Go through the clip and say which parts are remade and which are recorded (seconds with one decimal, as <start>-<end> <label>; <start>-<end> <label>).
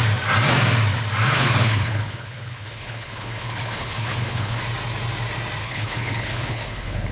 0.0-1.3 recorded; 1.3-4.6 remade; 4.6-5.6 recorded; 5.6-7.1 remade